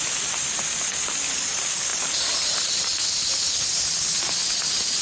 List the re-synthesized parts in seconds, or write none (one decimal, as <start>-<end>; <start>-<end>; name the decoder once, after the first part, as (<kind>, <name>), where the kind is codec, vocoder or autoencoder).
none